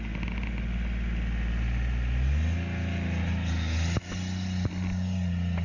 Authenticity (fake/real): real